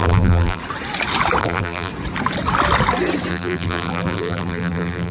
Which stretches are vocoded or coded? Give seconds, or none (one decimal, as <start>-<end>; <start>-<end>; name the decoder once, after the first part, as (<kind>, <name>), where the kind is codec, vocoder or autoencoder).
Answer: 0.0-0.6 (vocoder, BigVGAN v2); 1.4-1.9; 3.3-5.1